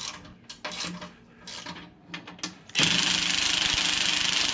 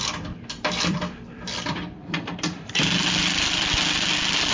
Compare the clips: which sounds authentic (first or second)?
first